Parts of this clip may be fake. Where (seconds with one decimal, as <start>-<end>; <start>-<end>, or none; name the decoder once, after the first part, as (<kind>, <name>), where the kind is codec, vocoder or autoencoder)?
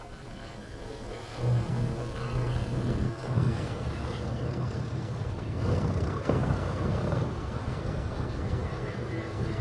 0.0-9.6 (codec, SNAC)